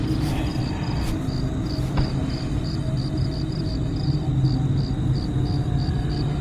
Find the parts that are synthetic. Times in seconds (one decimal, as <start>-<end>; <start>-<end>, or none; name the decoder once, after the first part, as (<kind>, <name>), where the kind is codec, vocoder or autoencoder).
0.0-0.5 (vocoder, BigVGAN v2); 2.1-4.3; 5.9-6.4

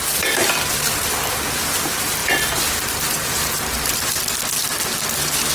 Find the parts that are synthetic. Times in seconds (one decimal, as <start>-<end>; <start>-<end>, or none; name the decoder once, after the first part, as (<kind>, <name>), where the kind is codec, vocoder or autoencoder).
none

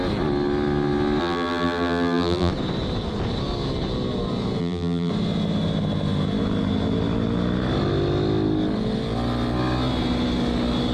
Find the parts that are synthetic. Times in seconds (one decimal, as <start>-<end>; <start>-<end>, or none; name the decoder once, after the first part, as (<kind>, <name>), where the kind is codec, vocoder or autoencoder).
1.2-2.5 (vocoder, BigVGAN v2); 4.6-5.1